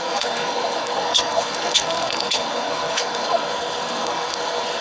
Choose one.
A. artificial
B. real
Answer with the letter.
A